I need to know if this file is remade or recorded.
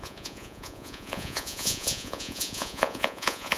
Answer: remade